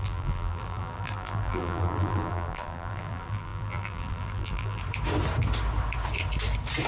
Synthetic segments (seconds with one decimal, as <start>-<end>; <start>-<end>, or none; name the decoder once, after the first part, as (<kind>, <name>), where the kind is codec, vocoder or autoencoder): 0.0-4.8 (vocoder, BigVGAN v2)